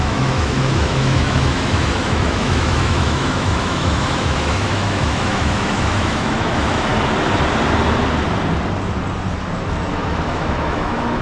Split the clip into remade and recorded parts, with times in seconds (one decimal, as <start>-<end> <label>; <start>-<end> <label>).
0.0-6.9 remade; 6.9-9.9 recorded; 9.9-11.2 remade